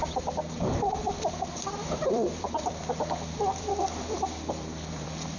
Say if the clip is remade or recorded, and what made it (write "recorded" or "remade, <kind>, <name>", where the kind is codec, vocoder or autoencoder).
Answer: remade, vocoder, BigVGAN v2